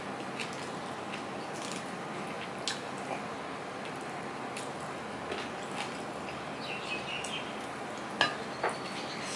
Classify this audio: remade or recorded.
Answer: recorded